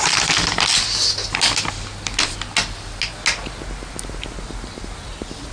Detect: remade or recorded recorded